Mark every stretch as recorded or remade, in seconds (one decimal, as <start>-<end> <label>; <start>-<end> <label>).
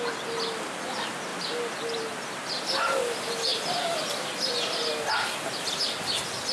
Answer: 0.0-6.5 recorded